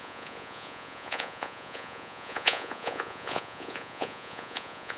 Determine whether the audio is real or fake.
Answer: fake